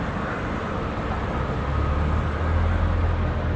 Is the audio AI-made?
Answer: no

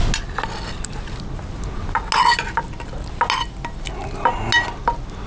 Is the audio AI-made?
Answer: no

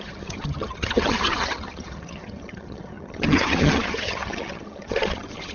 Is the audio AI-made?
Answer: yes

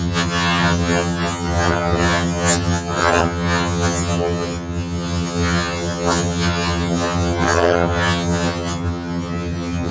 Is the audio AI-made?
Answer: yes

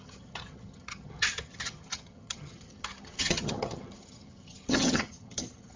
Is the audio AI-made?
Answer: yes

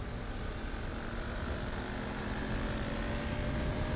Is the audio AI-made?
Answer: no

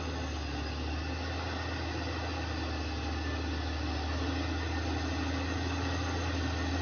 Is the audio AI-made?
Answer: no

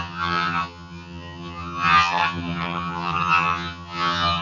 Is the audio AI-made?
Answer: yes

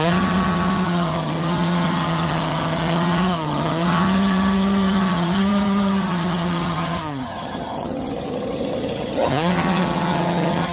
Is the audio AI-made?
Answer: yes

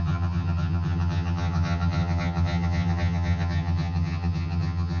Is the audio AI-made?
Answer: yes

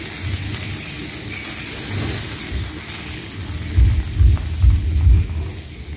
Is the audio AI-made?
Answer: no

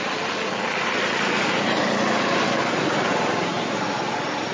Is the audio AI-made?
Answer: no